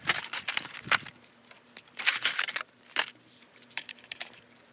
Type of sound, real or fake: fake